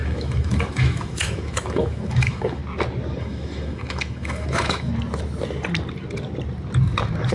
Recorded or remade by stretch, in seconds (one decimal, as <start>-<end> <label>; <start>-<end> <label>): 0.0-2.6 remade; 2.6-3.2 recorded; 3.2-4.9 remade; 4.9-7.3 recorded